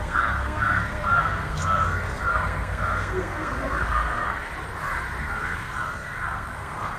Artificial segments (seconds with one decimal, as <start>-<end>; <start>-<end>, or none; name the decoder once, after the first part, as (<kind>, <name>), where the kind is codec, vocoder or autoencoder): 0.0-4.5 (codec, SNAC); 5.2-7.0